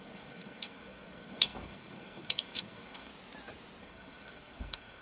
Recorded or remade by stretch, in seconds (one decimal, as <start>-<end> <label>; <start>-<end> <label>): 0.0-3.1 remade; 3.1-3.8 recorded; 3.8-5.0 remade